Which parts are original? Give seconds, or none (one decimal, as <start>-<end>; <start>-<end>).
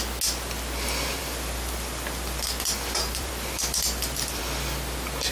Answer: 0.0-1.2; 4.4-5.3